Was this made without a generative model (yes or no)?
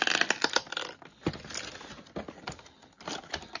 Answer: yes